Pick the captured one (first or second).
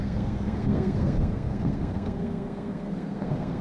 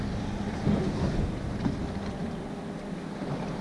second